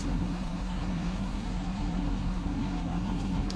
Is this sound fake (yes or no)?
yes